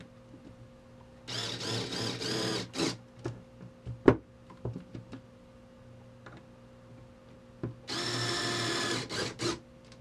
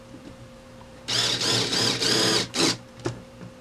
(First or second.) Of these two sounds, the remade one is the second